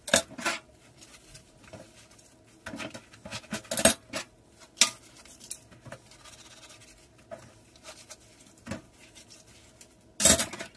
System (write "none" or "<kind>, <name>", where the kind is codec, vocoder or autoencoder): none